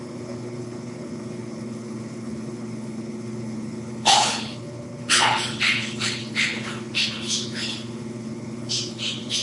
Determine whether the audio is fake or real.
fake